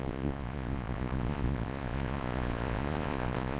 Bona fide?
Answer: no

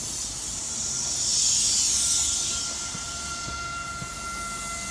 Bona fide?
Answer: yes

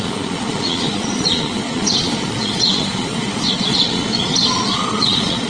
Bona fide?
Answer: no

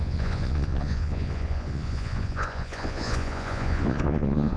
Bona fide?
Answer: no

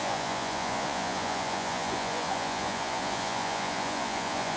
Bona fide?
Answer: no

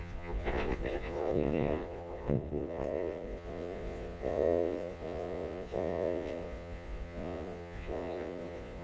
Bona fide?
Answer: no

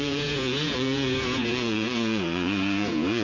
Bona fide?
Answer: no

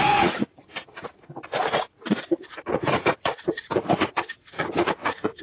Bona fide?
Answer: no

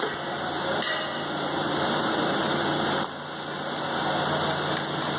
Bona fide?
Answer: yes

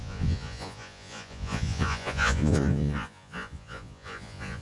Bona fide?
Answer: no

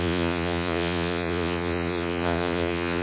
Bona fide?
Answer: no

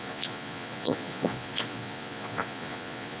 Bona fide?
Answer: no